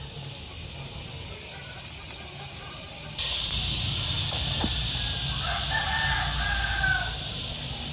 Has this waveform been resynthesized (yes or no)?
no